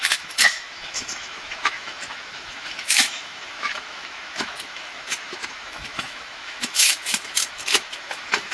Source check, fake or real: fake